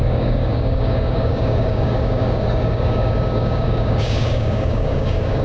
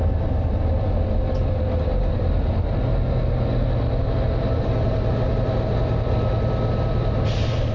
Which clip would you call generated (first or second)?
first